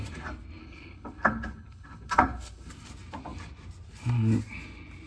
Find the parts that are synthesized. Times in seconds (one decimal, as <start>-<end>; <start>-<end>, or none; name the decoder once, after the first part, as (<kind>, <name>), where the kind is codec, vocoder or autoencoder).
0.6-2.7 (codec, HILCodec)

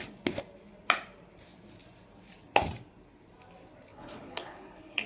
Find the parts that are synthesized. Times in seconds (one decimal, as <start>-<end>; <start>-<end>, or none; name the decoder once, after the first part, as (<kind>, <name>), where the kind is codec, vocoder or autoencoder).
3.9-5.1 (codec, HILCodec)

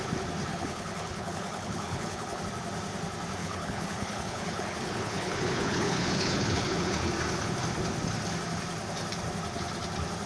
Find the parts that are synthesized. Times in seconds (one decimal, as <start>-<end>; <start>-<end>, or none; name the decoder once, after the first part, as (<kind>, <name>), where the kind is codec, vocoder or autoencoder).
0.5-2.4 (codec, HILCodec); 3.4-7.1